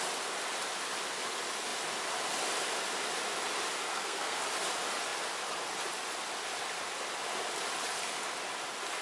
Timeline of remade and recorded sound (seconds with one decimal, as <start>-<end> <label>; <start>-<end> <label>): 0.0-3.9 recorded; 3.9-4.4 remade; 4.4-9.0 recorded